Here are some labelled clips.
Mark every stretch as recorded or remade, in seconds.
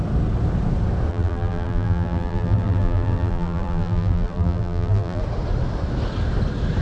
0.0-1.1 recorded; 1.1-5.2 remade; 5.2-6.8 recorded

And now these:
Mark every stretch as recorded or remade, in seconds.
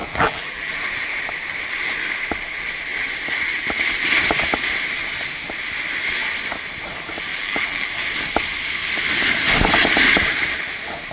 0.0-0.7 remade; 0.7-7.3 recorded; 7.3-7.9 remade; 7.9-11.1 recorded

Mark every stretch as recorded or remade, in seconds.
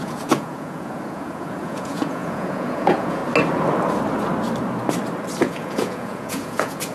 0.0-3.2 remade; 3.2-5.4 recorded; 5.4-6.9 remade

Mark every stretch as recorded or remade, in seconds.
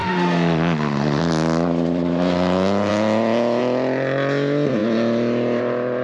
0.0-1.2 remade; 1.2-6.0 recorded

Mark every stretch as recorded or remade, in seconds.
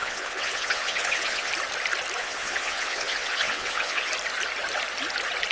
0.0-1.5 remade; 1.5-2.2 recorded; 2.2-4.1 remade; 4.1-5.5 recorded